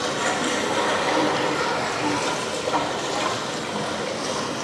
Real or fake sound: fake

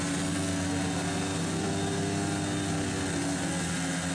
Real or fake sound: real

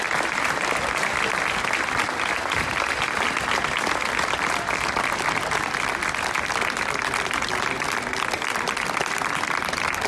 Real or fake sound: real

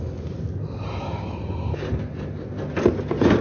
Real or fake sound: real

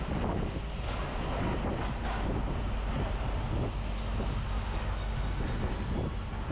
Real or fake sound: real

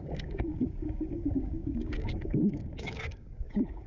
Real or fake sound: fake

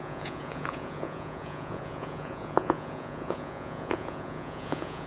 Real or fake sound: fake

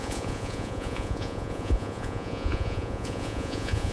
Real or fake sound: fake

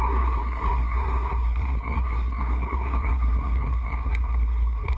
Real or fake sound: fake